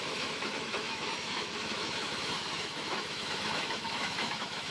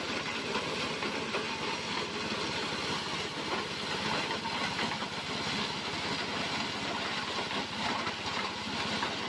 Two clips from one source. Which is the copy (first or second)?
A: first